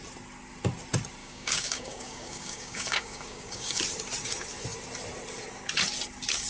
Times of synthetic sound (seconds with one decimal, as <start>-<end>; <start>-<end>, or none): 1.2-3.8